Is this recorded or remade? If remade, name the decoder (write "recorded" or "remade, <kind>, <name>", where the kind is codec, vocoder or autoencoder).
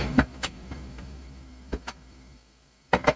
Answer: remade, autoencoder, DAC-VAE